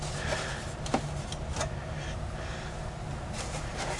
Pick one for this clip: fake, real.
real